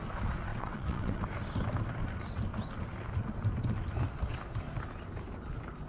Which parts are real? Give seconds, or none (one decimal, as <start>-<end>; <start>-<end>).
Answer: 0.0-0.5; 1.2-5.9